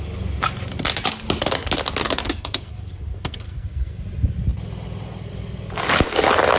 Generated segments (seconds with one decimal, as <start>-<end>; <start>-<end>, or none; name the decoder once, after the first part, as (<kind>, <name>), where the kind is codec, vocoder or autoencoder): 2.0-4.0 (codec, SNAC)